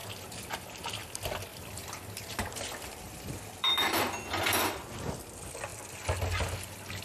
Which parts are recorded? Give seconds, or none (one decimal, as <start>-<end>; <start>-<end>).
0.0-1.5; 4.0-7.0